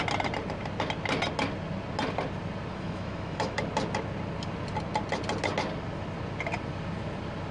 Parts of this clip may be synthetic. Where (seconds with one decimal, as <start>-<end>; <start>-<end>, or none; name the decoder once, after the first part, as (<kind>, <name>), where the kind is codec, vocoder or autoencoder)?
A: 2.7-3.6 (autoencoder, DAC-VAE)